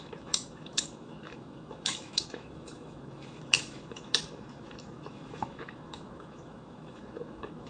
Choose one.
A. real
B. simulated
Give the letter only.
B